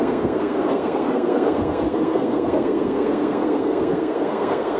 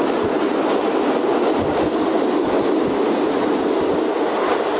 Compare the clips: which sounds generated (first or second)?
first